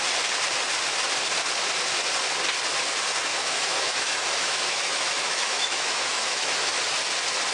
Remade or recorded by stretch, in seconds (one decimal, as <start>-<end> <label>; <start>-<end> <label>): 0.0-3.3 recorded; 3.3-6.8 remade; 6.8-7.5 recorded